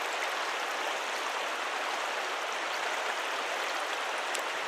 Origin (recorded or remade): recorded